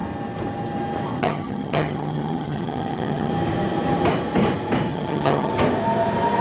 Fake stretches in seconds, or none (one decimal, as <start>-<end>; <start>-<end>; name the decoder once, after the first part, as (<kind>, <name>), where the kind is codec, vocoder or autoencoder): 1.2-3.3 (vocoder, HiFi-GAN); 4.9-5.5